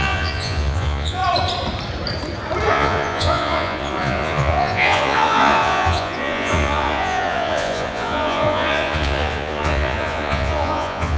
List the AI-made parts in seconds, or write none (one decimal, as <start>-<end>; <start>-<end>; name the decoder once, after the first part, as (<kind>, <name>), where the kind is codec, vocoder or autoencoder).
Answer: 0.0-1.2 (vocoder, Vocos); 2.7-11.2